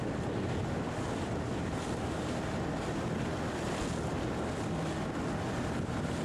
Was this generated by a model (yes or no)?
no